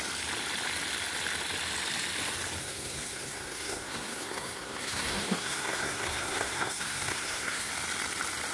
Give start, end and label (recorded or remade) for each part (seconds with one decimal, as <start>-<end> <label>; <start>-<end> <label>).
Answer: 0.0-2.6 recorded; 2.6-7.7 remade; 7.7-8.5 recorded